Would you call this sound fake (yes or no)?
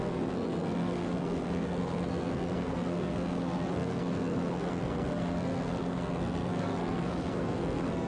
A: yes